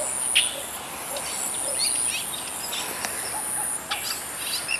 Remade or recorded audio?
recorded